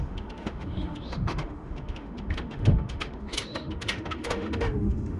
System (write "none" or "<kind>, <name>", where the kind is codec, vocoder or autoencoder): autoencoder, DAC-VAE